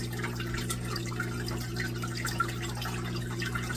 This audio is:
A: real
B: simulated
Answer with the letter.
A